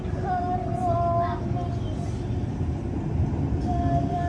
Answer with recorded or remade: recorded